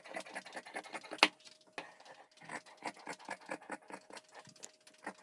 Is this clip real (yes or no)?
yes